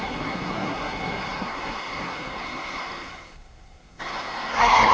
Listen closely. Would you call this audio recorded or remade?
remade